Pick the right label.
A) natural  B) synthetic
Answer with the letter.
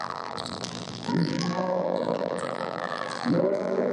B